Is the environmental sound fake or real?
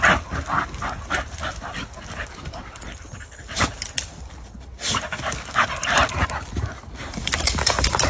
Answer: real